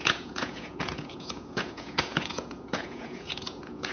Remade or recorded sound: remade